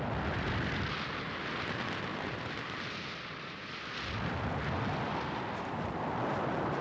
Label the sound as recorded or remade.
recorded